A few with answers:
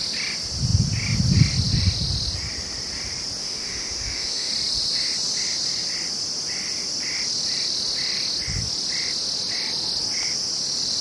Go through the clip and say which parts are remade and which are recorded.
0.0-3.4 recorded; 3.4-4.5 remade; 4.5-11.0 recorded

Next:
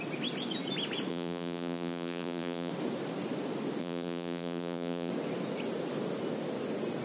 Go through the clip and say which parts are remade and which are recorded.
0.0-1.1 recorded; 1.1-2.7 remade; 2.7-3.8 recorded; 3.8-5.1 remade; 5.1-7.0 recorded

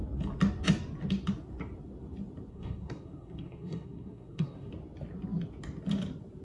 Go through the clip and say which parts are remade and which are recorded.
0.0-2.5 recorded; 2.5-4.7 remade; 4.7-6.4 recorded

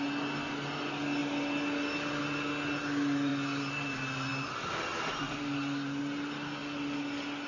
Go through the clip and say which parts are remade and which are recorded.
0.0-7.5 recorded

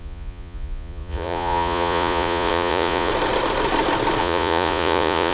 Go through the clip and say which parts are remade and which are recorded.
0.0-3.1 remade; 3.1-4.2 recorded; 4.2-5.3 remade

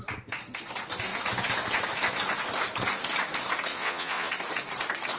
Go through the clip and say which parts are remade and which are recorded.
0.0-3.7 recorded; 3.7-4.3 remade; 4.3-5.2 recorded